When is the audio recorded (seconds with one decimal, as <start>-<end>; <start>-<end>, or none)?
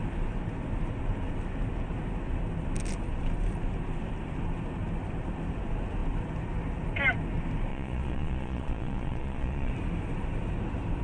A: 0.0-7.7; 9.7-11.0